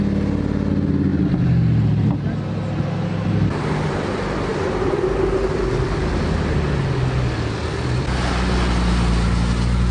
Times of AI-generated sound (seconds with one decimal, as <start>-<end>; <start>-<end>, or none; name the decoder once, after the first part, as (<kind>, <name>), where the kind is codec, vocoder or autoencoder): none